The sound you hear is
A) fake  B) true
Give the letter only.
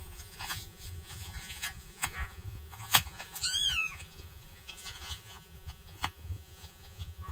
A